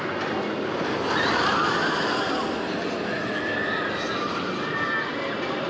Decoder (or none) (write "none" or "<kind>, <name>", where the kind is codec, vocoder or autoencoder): none